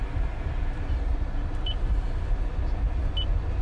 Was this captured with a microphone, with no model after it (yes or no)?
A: yes